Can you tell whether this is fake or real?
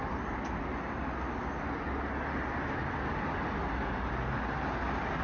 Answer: real